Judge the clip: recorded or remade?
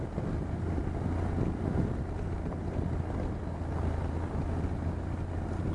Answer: recorded